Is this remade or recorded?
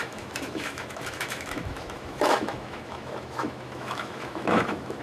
remade